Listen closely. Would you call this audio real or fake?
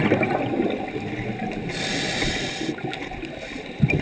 real